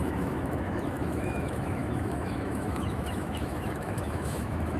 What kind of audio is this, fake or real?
fake